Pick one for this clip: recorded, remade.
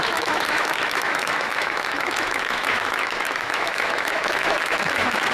remade